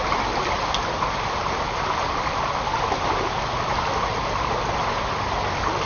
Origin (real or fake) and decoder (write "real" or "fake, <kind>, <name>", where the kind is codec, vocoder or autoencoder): real